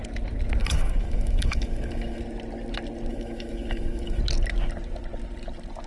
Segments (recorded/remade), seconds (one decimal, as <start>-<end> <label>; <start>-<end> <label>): 0.0-0.6 recorded; 0.6-2.2 remade; 2.2-3.1 recorded; 3.1-4.2 remade; 4.2-5.9 recorded